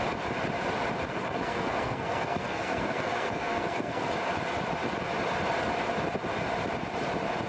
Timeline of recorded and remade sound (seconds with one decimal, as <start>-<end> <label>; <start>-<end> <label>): 0.0-1.1 recorded; 1.1-4.1 remade; 4.1-7.5 recorded